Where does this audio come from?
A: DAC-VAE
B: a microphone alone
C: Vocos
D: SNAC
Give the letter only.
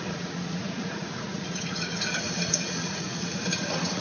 C